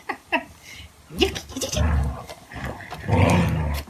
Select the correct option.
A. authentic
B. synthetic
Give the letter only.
A